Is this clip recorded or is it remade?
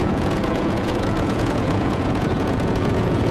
remade